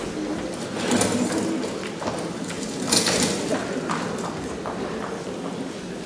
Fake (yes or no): no